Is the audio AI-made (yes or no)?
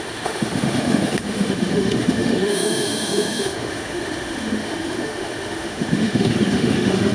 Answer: yes